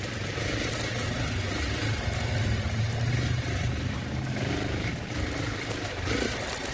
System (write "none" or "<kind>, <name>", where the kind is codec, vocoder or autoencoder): none